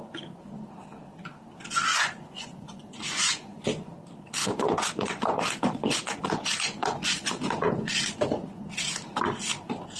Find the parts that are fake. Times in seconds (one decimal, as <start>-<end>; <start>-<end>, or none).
1.9-3.9; 4.4-8.6